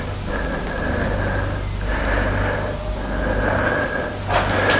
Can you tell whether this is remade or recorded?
recorded